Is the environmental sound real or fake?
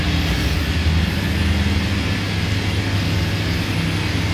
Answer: real